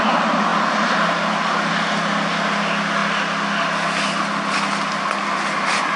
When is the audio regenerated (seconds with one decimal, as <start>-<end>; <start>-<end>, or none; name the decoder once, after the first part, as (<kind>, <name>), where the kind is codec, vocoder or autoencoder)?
none